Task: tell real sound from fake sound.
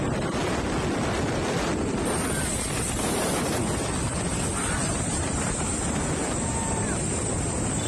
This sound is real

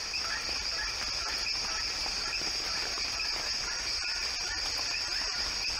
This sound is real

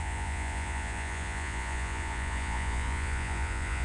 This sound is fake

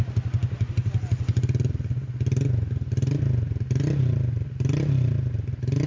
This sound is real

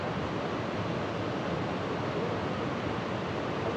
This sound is real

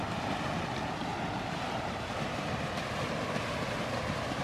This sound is real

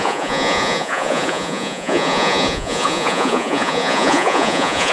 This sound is fake